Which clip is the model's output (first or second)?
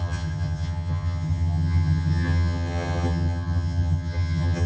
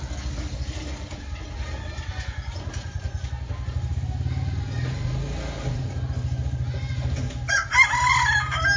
first